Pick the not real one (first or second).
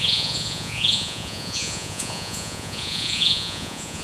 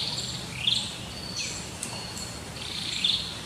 first